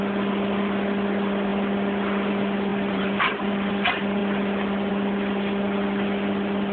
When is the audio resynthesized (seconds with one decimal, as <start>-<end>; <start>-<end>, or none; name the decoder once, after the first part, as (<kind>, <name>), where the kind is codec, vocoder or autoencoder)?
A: 2.7-3.7 (vocoder, BigVGAN v2)